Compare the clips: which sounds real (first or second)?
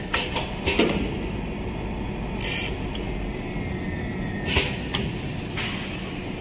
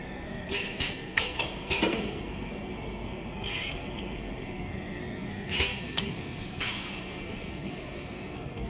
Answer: first